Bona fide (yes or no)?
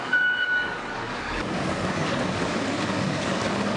no